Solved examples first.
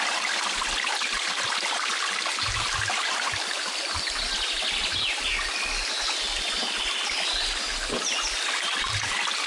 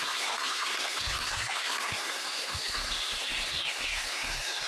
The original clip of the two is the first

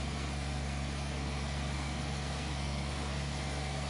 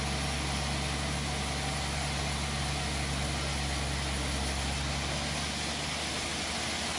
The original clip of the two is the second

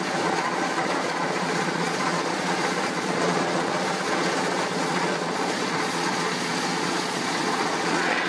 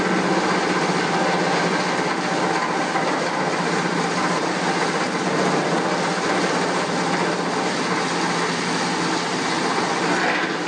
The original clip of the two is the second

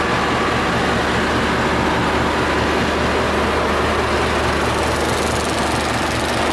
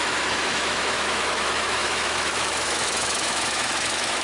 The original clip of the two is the first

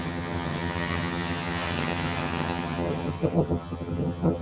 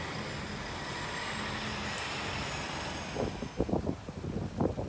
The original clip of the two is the second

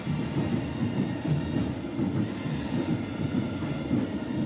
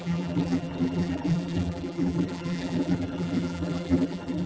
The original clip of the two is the first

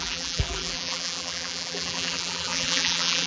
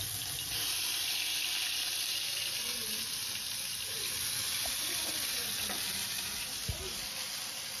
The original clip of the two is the second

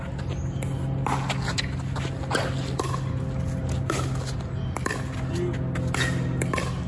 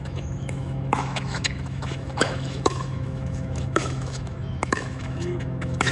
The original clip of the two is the first